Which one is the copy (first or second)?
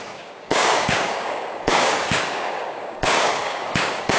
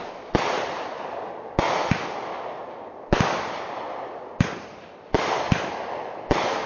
first